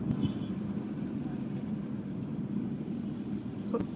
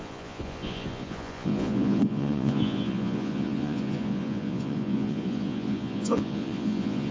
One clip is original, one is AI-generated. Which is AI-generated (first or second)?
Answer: second